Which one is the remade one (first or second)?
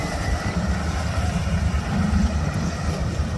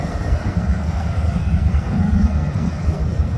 second